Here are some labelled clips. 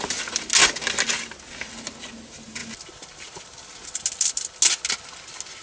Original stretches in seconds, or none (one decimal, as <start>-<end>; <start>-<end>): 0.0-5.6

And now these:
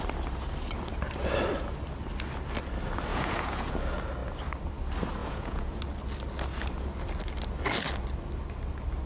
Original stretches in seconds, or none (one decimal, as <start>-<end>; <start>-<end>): 0.0-3.1; 3.7-5.2; 5.8-9.1

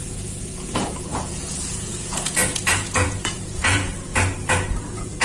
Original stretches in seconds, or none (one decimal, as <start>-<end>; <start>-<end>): 3.9-4.8